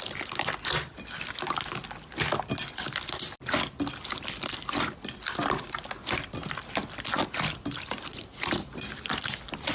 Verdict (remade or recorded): recorded